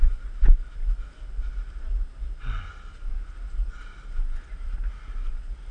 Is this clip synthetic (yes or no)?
no